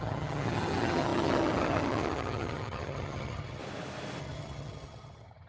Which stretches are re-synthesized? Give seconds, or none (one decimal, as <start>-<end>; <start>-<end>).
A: 0.0-3.6; 4.2-5.5

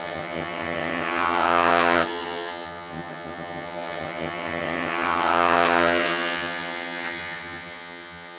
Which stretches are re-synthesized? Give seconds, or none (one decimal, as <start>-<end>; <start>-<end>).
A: 0.0-8.4

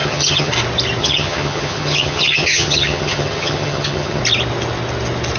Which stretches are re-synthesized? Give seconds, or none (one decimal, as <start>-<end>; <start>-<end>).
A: 0.0-0.5; 1.0-4.2

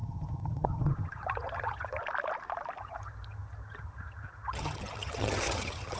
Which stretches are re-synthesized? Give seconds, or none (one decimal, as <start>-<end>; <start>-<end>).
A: 0.0-2.0; 2.8-6.0